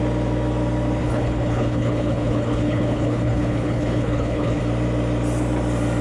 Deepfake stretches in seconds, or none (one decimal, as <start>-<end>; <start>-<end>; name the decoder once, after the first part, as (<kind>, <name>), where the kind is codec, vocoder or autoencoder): 1.0-4.6 (codec, HILCodec)